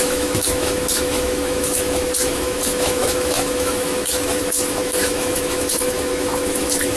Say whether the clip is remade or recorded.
remade